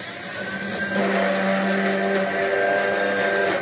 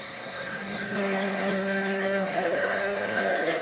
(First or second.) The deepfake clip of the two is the second